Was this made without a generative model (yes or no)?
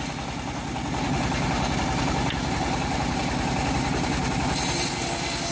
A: yes